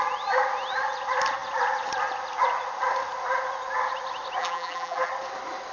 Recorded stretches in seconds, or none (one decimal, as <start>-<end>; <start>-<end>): 0.0-4.4; 5.1-5.7